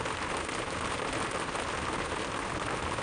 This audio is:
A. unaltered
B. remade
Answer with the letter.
A